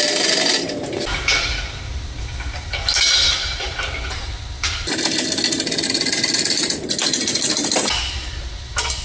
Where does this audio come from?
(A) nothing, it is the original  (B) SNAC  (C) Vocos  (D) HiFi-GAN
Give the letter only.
A